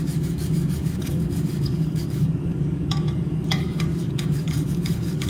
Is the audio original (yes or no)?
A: no